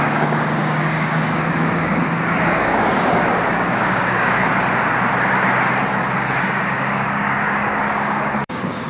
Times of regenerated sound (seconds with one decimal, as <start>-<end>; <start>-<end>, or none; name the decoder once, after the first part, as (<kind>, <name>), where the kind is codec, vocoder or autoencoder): 0.0-4.4 (codec, DAC); 6.3-8.9